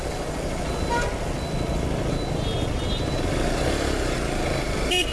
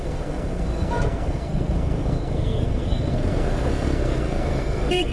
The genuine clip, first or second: first